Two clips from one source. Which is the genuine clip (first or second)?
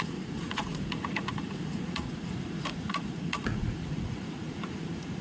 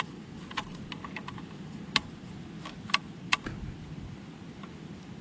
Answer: second